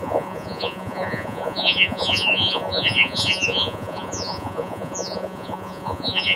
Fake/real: fake